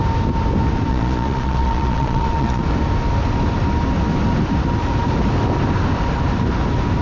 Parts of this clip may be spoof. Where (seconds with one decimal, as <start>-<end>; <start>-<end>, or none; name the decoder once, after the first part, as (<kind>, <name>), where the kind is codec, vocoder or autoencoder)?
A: 0.9-2.6 (vocoder, Vocos)